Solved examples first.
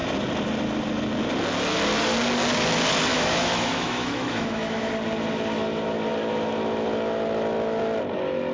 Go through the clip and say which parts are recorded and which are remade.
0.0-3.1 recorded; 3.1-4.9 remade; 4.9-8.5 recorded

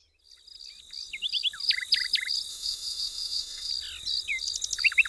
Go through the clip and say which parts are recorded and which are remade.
0.0-2.5 recorded; 2.5-3.7 remade; 3.7-5.1 recorded

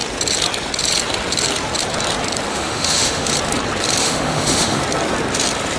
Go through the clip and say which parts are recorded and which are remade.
0.0-2.5 recorded; 2.5-3.3 remade; 3.3-4.0 recorded; 4.0-4.8 remade; 4.8-5.8 recorded

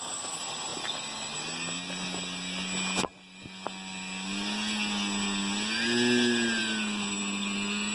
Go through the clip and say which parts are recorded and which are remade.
0.0-7.9 recorded